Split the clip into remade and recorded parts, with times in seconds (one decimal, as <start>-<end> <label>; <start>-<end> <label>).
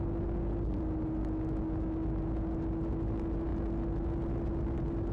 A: 0.0-5.1 recorded